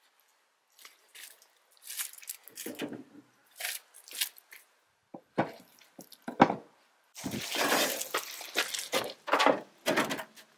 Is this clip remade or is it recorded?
recorded